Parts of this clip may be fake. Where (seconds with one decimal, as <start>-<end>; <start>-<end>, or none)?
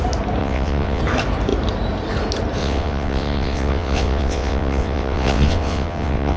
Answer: 0.4-1.0; 2.6-6.4